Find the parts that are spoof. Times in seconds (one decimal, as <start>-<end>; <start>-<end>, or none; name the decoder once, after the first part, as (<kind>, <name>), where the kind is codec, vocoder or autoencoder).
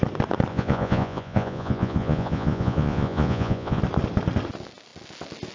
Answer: 0.5-3.8 (vocoder, Vocos)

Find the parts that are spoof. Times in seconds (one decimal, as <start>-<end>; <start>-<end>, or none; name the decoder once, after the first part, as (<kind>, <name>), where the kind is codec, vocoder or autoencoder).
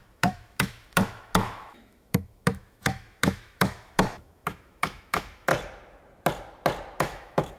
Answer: 0.0-5.5 (autoencoder, DAC-VAE); 7.0-7.6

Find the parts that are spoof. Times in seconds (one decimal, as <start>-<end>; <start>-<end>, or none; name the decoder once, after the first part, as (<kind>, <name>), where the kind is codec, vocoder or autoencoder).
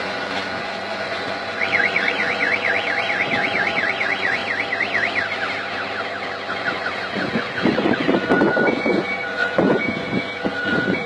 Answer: 0.0-4.4 (vocoder, Vocos); 6.5-11.1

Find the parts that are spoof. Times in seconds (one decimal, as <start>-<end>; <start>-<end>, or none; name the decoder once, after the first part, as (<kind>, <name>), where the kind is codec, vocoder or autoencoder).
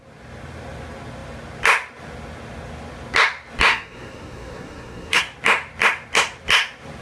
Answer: 3.7-5.2 (codec, SNAC)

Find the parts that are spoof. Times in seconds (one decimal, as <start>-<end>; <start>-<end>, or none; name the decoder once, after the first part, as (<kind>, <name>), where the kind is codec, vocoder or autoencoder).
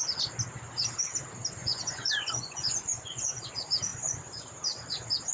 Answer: 1.6-3.4 (vocoder, Vocos); 3.9-4.5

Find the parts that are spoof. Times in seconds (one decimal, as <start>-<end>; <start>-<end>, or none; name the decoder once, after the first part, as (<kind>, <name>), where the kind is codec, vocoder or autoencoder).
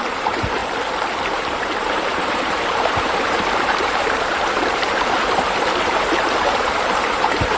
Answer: 0.0-0.6 (vocoder, BigVGAN v2); 1.8-7.6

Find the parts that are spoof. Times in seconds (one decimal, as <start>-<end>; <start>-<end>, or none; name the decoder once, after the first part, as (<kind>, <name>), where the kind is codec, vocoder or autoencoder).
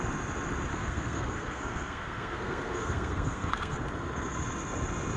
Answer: 0.7-3.8 (codec, SNAC)